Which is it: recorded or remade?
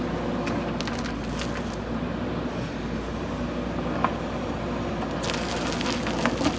recorded